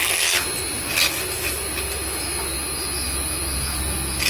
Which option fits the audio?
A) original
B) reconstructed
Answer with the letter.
A